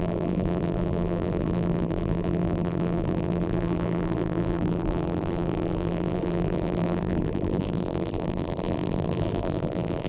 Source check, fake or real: fake